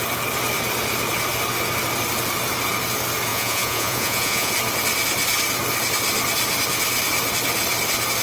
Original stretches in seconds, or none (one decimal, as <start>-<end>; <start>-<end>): 0.0-3.3; 4.5-8.2